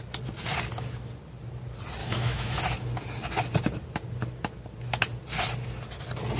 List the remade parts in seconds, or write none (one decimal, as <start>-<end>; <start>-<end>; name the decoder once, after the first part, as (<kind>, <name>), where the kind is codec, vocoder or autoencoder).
2.0-2.6 (autoencoder, DAC-VAE)

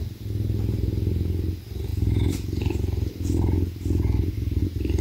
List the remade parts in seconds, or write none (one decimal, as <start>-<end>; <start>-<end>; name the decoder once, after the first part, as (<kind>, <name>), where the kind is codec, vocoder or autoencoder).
none

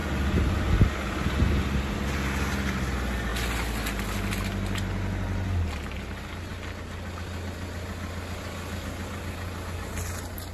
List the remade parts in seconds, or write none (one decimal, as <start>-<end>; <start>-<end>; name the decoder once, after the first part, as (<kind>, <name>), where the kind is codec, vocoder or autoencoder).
none

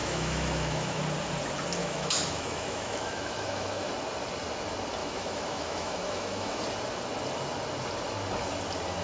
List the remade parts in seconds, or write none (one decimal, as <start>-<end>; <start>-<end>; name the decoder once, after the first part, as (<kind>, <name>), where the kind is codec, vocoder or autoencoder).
0.0-1.0 (autoencoder, DAC-VAE); 1.8-3.9; 5.0-6.6